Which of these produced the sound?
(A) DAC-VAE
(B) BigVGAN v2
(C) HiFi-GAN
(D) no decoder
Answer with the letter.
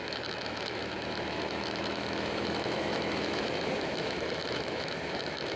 A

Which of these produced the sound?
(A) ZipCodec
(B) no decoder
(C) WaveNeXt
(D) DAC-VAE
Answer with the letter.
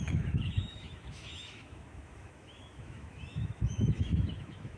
D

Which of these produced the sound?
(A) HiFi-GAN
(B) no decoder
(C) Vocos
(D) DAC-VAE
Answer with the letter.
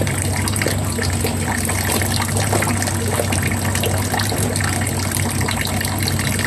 B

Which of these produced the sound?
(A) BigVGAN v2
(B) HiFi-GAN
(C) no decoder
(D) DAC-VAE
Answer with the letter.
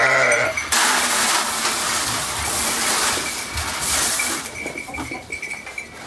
C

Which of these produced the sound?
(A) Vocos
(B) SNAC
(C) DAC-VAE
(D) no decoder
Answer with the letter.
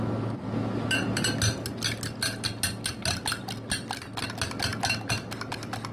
D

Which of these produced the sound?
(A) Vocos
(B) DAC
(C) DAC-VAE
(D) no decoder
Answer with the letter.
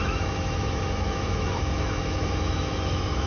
C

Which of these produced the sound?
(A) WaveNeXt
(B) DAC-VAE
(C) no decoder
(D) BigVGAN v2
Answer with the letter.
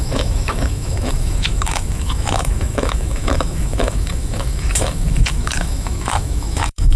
B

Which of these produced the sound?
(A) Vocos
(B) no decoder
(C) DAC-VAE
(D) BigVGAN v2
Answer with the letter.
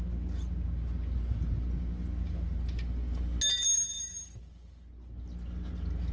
B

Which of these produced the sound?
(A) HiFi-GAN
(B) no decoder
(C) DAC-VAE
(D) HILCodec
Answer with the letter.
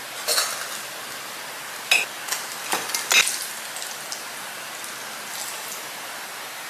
B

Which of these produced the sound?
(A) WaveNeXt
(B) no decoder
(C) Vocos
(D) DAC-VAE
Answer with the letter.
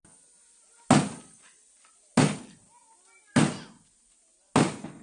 B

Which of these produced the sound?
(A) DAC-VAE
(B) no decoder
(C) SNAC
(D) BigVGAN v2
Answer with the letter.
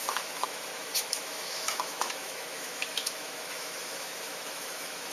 A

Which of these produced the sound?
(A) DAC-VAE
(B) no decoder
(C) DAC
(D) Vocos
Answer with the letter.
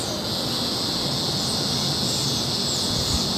B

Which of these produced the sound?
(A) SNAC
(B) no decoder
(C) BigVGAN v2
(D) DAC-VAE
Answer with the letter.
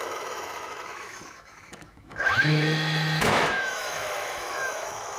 D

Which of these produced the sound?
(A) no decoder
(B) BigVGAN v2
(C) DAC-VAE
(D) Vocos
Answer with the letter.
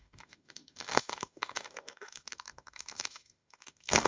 C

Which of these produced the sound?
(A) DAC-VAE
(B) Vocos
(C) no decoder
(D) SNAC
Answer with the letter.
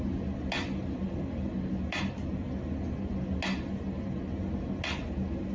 C